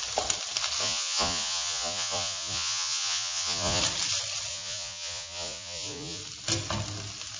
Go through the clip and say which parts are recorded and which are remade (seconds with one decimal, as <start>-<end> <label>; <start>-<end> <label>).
0.0-0.8 recorded; 0.8-3.8 remade; 3.8-4.5 recorded; 4.5-6.2 remade; 6.2-7.4 recorded